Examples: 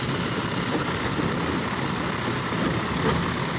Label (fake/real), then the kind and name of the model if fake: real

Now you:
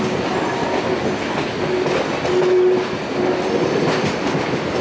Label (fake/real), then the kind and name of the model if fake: real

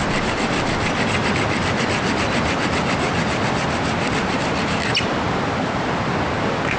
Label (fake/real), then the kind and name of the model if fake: real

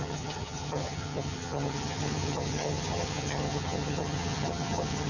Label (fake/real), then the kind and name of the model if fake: fake, vocoder, HiFi-GAN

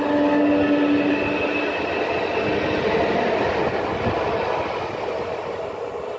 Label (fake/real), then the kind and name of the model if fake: real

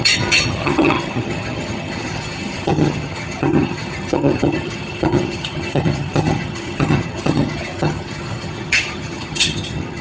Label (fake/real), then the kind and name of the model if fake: fake, vocoder, HiFi-GAN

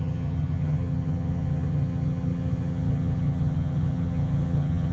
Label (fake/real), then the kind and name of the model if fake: fake, vocoder, HiFi-GAN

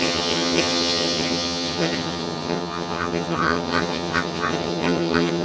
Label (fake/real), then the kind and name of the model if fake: fake, vocoder, HiFi-GAN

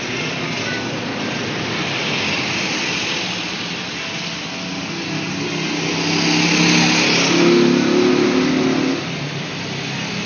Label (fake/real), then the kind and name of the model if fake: real